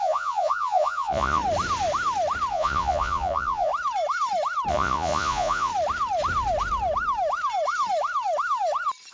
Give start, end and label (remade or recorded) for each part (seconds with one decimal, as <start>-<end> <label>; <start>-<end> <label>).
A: 0.0-1.4 remade; 1.4-2.5 recorded; 2.5-3.7 remade; 3.7-4.7 recorded; 4.7-5.7 remade; 5.7-9.1 recorded

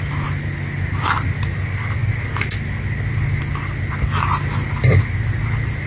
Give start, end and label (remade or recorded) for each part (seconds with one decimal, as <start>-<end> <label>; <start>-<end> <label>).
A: 0.0-5.9 recorded

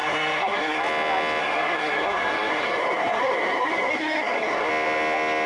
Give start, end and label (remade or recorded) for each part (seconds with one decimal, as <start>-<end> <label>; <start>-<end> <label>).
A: 0.0-0.8 remade; 0.8-1.4 recorded; 1.4-4.7 remade; 4.7-5.5 recorded

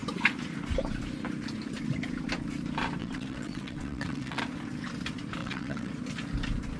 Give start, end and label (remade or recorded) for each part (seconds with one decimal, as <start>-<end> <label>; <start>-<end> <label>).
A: 0.0-3.0 recorded; 3.0-4.4 remade; 4.4-5.4 recorded; 5.4-5.9 remade; 5.9-6.8 recorded

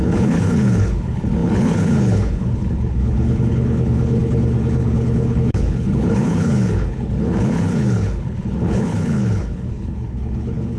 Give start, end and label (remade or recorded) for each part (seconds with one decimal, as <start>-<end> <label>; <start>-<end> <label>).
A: 0.0-10.8 remade

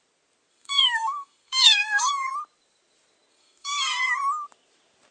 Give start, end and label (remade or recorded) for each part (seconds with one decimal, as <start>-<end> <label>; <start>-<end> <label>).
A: 0.0-0.5 recorded; 0.5-2.1 remade; 2.1-3.3 recorded; 3.3-4.1 remade; 4.1-5.1 recorded